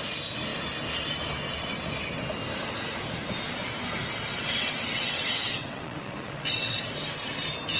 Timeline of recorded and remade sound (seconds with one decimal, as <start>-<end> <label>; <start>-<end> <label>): 0.0-4.3 recorded; 4.3-6.9 remade; 6.9-7.8 recorded

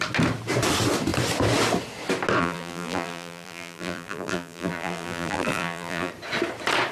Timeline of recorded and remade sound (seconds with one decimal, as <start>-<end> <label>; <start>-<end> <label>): 0.0-2.4 recorded; 2.4-6.1 remade; 6.1-6.9 recorded